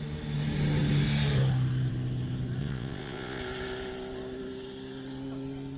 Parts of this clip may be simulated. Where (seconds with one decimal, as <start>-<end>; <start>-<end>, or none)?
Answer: 2.6-3.4